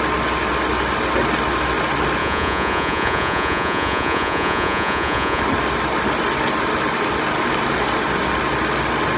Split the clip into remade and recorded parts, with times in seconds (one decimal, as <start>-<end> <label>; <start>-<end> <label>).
0.0-2.2 recorded; 2.2-5.4 remade; 5.4-9.2 recorded